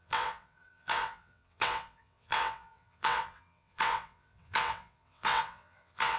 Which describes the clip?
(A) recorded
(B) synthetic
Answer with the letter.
B